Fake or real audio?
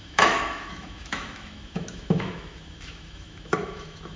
fake